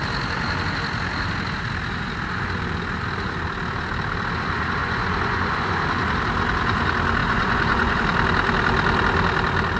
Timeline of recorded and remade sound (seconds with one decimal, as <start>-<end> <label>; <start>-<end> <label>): 0.0-4.8 recorded; 4.8-5.8 remade; 5.8-7.2 recorded; 7.2-8.0 remade; 8.0-9.8 recorded